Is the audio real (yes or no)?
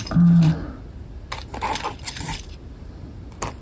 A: yes